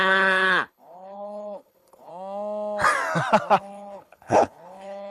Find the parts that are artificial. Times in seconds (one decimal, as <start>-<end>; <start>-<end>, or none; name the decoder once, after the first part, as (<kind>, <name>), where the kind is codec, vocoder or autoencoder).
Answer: 0.0-2.1 (codec, HILCodec); 3.6-5.1